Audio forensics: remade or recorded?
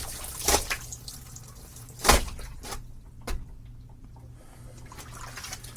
recorded